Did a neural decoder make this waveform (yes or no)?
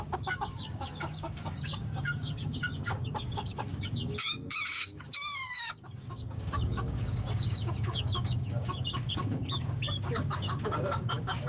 yes